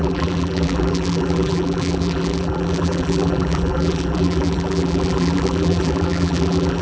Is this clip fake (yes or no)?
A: yes